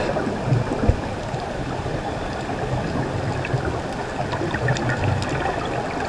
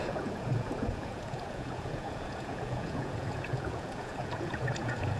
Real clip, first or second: first